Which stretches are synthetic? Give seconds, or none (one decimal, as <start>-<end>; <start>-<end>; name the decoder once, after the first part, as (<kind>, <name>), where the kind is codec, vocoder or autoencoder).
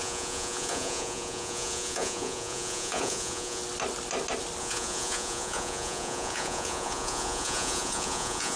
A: 0.0-3.6 (vocoder, Vocos); 4.6-8.6